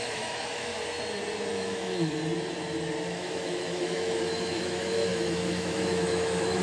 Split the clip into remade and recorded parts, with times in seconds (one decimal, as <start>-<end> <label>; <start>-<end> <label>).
0.0-0.7 remade; 0.7-1.5 recorded; 1.5-2.2 remade; 2.2-3.1 recorded; 3.1-6.6 remade